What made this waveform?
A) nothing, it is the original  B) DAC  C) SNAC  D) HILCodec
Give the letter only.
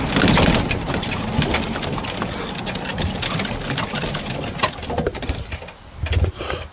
A